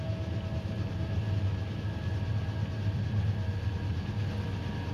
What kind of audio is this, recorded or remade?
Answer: recorded